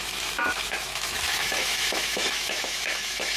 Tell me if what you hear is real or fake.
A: fake